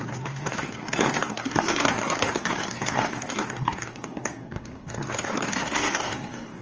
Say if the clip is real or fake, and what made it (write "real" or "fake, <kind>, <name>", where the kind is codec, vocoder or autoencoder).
fake, codec, SNAC